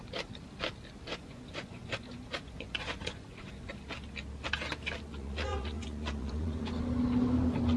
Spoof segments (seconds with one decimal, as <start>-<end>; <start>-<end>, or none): 1.1-3.7; 5.1-6.8